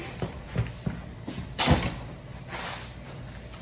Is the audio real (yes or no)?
yes